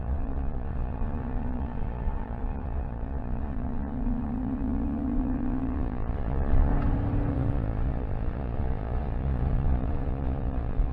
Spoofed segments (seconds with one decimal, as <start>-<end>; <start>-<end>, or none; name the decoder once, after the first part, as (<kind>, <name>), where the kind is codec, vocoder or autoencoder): 0.0-6.7 (vocoder, Vocos); 7.3-10.9